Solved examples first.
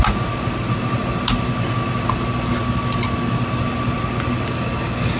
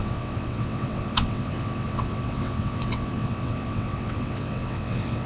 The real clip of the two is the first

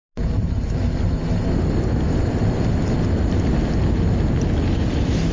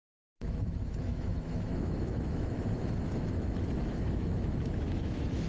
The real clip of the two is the first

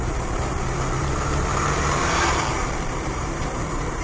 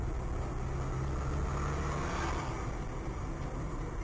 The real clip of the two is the second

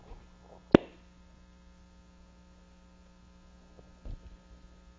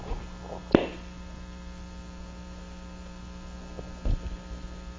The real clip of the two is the first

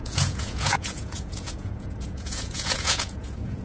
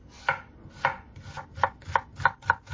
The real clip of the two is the second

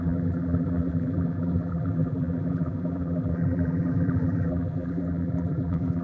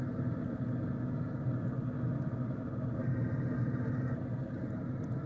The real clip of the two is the second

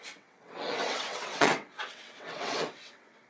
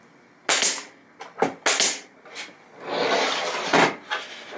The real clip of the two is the second